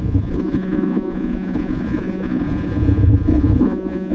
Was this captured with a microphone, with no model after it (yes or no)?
no